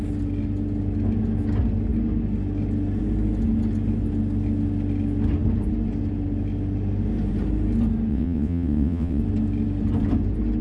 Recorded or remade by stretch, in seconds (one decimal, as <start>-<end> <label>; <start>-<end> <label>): 0.0-8.1 recorded; 8.1-9.2 remade; 9.2-10.6 recorded